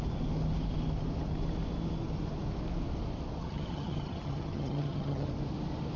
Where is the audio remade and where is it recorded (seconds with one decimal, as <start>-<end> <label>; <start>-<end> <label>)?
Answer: 0.0-3.4 recorded; 3.4-5.3 remade; 5.3-6.0 recorded